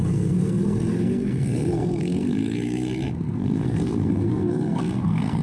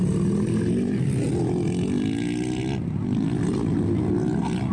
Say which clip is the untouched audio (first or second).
second